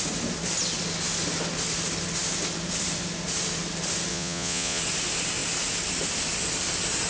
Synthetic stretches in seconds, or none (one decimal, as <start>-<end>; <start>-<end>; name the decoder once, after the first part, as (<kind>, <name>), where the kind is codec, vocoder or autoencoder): 4.1-4.8 (vocoder, Vocos)